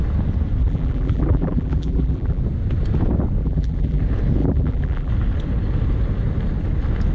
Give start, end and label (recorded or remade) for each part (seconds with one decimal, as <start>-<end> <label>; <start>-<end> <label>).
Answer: 0.0-0.6 recorded; 0.6-2.4 remade; 2.4-3.4 recorded; 3.4-4.0 remade; 4.0-4.4 recorded; 4.4-5.1 remade; 5.1-7.1 recorded